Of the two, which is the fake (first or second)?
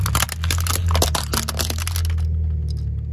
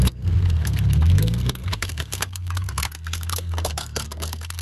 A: second